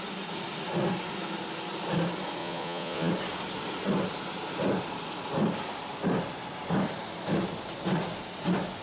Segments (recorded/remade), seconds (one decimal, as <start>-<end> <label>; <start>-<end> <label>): 0.0-2.4 recorded; 2.4-3.1 remade; 3.1-8.8 recorded